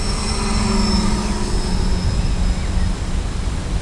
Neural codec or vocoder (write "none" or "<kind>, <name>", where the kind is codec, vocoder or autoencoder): none